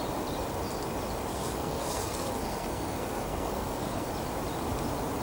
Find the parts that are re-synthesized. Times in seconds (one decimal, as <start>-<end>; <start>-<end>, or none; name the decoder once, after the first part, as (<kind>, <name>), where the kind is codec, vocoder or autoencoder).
1.3-4.1 (codec, SNAC)